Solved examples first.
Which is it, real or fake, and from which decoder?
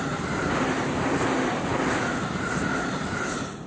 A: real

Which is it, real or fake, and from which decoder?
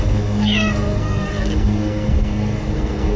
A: fake, codec, SNAC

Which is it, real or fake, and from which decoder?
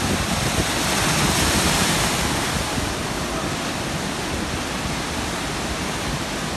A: real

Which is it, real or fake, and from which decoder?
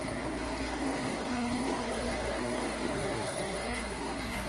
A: fake, codec, SNAC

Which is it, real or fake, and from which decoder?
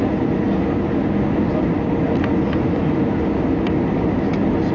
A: real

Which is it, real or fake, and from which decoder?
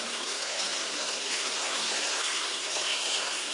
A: fake, codec, SNAC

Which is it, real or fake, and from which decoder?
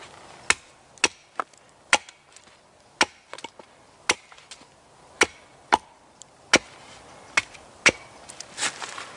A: real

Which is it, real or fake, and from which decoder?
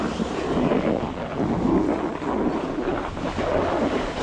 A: real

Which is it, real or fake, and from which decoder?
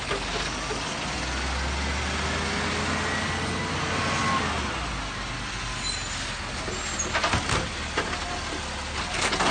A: real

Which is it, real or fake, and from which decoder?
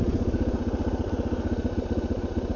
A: real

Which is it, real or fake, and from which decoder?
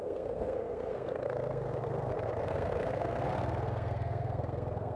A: fake, codec, SNAC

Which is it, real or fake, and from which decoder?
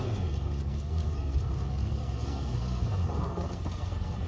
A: fake, codec, SNAC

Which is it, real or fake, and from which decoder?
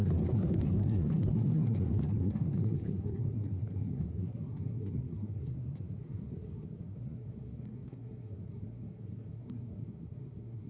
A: fake, codec, SNAC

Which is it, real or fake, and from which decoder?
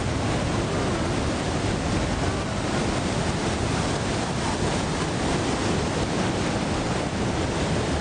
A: real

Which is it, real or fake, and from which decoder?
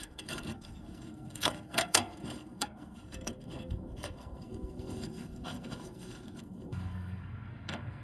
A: fake, codec, SNAC